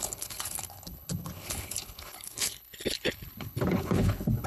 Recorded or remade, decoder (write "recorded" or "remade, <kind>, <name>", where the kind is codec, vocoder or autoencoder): remade, codec, HILCodec